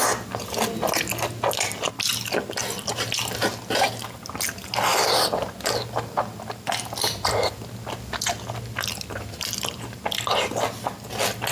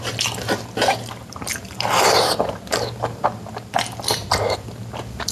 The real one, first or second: first